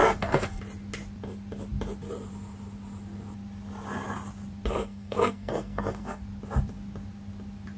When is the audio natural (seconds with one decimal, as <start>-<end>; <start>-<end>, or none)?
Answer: 0.6-4.7; 6.2-7.8